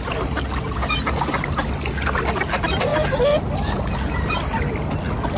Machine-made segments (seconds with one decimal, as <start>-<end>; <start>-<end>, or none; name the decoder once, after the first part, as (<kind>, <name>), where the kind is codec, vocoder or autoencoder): none